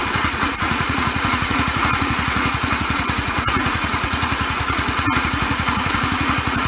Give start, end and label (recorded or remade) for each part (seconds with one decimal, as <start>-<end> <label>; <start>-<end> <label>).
0.0-6.7 remade